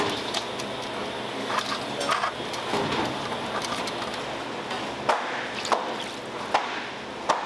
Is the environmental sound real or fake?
real